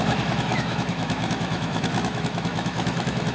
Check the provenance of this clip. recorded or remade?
remade